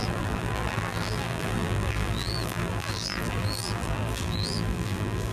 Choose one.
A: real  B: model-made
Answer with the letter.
B